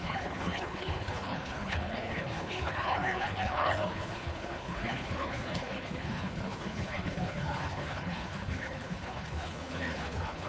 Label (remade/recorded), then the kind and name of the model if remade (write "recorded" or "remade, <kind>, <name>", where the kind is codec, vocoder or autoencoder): remade, codec, HILCodec